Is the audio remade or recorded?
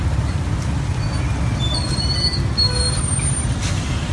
recorded